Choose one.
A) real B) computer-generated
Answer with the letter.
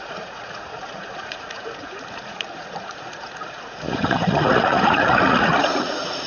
B